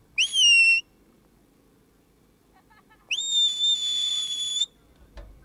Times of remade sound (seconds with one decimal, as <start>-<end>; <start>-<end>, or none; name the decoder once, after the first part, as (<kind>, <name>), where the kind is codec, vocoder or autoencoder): 4.1-4.8 (vocoder, BigVGAN v2)